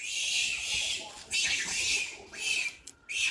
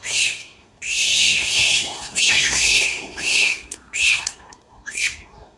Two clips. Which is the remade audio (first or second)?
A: second